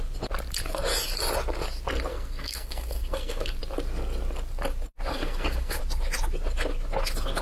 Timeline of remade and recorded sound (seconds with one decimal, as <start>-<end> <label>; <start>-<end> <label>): 0.0-2.1 recorded; 2.1-3.6 remade; 3.6-5.1 recorded; 5.1-5.8 remade; 5.8-7.4 recorded